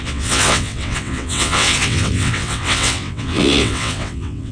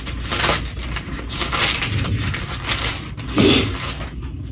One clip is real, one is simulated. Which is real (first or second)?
second